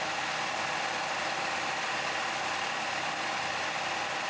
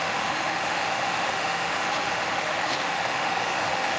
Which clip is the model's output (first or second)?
second